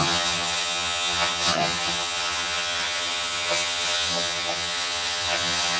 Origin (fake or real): fake